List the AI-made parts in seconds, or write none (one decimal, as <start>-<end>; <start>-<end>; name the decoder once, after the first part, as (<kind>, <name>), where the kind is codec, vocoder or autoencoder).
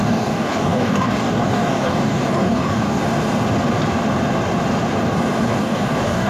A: 0.0-3.0 (codec, DAC); 5.6-6.3